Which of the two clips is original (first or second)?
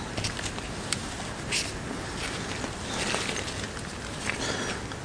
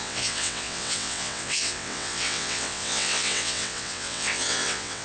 first